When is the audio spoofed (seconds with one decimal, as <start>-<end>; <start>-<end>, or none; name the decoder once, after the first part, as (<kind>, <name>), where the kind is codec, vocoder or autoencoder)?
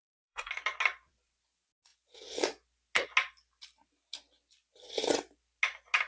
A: 0.0-0.5 (codec, SNAC)